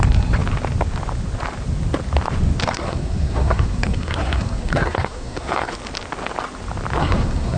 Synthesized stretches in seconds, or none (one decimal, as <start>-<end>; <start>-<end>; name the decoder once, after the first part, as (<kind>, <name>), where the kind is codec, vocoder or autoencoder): 2.6-5.7 (codec, SNAC); 7.0-7.6